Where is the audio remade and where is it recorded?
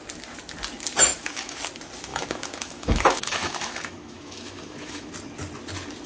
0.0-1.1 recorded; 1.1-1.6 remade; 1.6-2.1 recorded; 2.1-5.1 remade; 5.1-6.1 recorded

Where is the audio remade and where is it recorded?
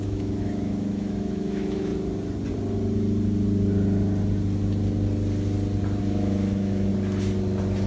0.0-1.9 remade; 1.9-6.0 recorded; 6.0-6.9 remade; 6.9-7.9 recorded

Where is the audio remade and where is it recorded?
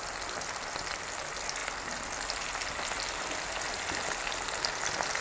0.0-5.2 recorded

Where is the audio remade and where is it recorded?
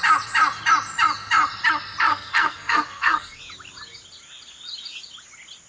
0.0-2.1 recorded; 2.1-3.4 remade; 3.4-5.7 recorded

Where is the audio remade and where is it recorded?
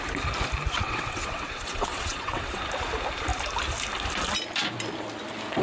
0.0-0.8 recorded; 0.8-2.6 remade; 2.6-5.6 recorded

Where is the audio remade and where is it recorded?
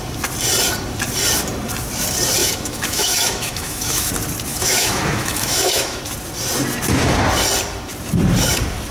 0.0-2.4 recorded; 2.4-4.1 remade; 4.1-4.5 recorded; 4.5-6.0 remade; 6.0-8.9 recorded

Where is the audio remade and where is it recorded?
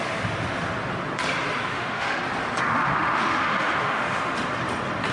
0.0-1.7 recorded; 1.7-2.2 remade; 2.2-2.7 recorded; 2.7-4.2 remade; 4.2-5.1 recorded